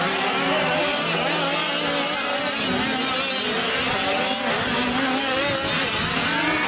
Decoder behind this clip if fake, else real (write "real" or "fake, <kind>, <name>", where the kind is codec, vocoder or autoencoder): real